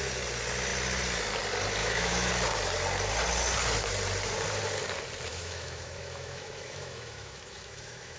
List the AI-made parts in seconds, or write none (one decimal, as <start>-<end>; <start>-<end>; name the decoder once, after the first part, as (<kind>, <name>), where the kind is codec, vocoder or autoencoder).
1.8-2.3 (autoencoder, DAC-VAE); 5.3-8.2